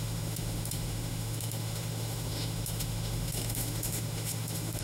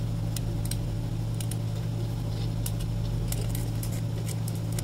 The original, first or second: second